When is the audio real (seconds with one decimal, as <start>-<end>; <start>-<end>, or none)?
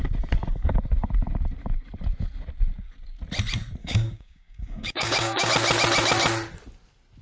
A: 0.0-3.8; 5.5-7.2